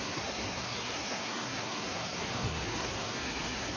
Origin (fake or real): fake